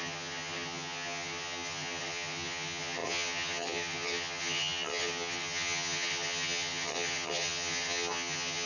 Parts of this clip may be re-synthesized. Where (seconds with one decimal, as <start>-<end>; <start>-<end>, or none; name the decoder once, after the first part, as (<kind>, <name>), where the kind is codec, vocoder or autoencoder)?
0.0-8.7 (vocoder, HiFi-GAN)